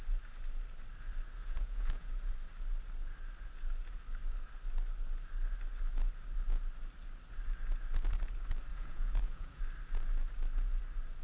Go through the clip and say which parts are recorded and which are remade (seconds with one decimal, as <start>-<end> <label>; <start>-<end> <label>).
0.0-1.4 recorded; 1.4-2.1 remade; 2.1-8.7 recorded; 8.7-9.6 remade; 9.6-11.2 recorded